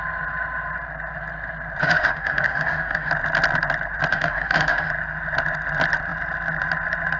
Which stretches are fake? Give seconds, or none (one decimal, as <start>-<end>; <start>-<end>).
1.8-3.1; 4.1-4.9